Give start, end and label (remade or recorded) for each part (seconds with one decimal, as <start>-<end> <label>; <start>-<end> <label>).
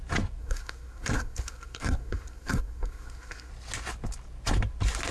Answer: 0.0-0.4 recorded; 0.4-3.5 remade; 3.5-5.1 recorded